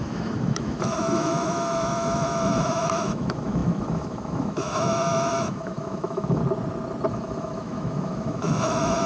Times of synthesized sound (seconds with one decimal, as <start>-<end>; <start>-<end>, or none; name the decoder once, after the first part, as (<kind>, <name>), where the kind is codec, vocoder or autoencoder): 0.0-6.4 (autoencoder, DAC-VAE); 7.1-9.1